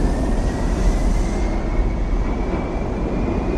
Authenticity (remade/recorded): recorded